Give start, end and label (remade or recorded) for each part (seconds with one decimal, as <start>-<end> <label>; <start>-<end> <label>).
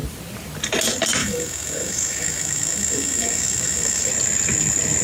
0.0-1.2 recorded; 1.2-4.1 remade; 4.1-5.0 recorded